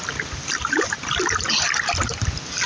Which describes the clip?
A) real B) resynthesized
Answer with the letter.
A